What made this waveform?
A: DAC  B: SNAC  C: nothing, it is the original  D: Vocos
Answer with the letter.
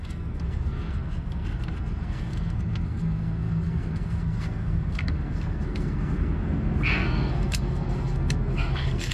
B